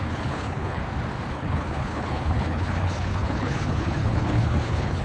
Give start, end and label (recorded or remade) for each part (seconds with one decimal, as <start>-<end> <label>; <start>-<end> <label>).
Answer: 0.0-0.8 remade; 0.8-1.3 recorded; 1.3-5.0 remade